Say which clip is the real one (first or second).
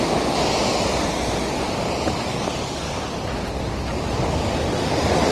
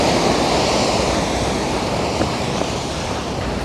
first